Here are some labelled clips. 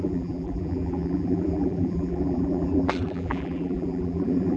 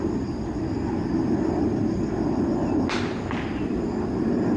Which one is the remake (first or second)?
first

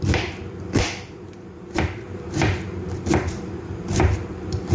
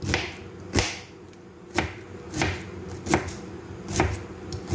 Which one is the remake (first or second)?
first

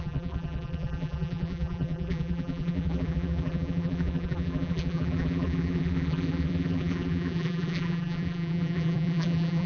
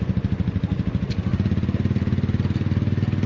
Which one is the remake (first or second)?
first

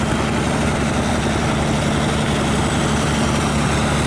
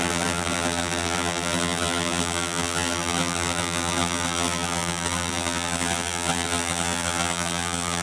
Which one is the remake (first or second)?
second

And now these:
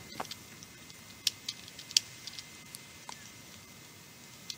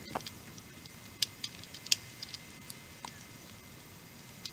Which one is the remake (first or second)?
second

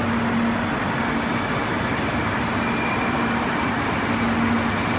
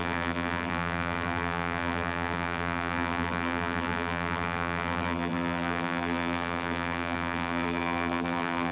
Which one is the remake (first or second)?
second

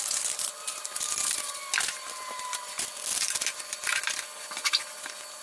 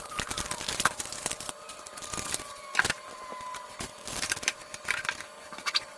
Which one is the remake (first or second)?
second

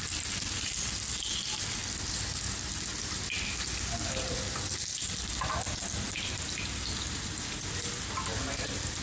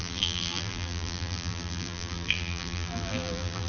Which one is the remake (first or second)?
second